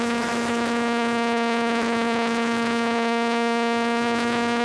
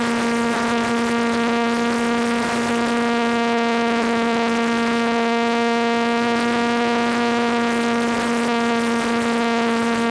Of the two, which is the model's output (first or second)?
first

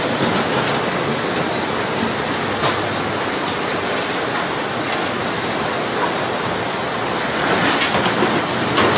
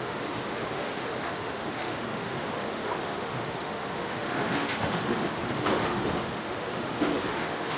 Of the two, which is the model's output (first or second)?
second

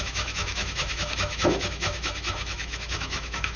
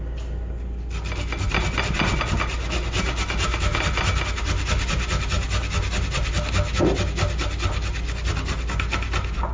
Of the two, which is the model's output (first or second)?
first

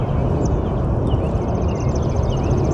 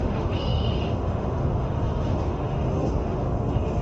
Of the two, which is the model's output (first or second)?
second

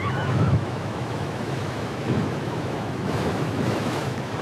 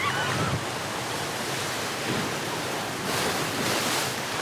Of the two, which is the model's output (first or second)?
first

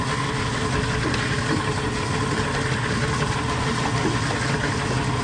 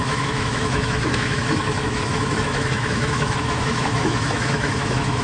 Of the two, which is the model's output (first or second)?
second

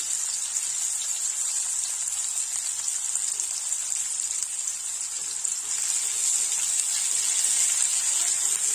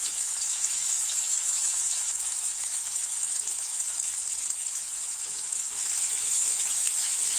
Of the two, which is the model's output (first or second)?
second